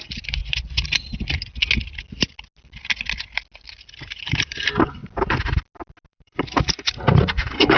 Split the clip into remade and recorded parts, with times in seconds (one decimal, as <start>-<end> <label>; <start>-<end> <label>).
0.0-0.4 remade; 0.4-4.2 recorded; 4.2-5.0 remade; 5.0-6.1 recorded; 6.1-7.8 remade